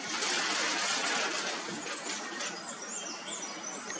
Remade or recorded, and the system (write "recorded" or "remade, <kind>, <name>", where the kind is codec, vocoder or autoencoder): recorded